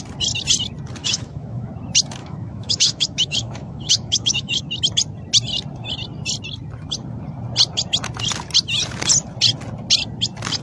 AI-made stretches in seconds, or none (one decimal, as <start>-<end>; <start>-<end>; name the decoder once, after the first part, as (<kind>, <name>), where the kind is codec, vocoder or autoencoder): 1.0-1.7 (autoencoder, DAC-VAE); 2.2-4.6